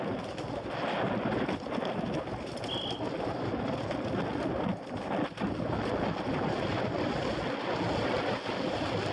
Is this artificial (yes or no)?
no